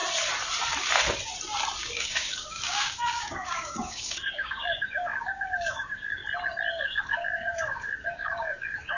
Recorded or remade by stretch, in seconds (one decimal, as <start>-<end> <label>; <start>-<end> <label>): 0.0-1.8 recorded; 1.8-6.2 remade; 6.2-6.8 recorded; 6.8-9.0 remade